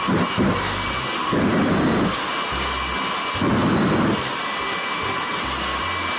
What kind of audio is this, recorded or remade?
recorded